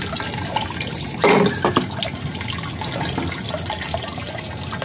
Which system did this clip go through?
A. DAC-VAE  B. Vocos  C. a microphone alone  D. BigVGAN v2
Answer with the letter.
C